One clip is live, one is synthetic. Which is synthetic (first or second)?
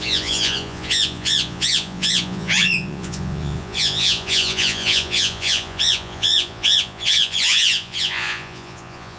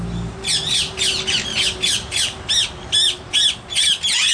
first